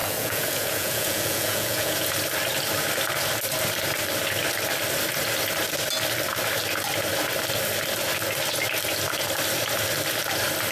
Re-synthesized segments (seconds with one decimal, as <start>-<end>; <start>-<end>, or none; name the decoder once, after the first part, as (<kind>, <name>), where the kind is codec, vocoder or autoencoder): 0.0-2.1 (vocoder, Vocos)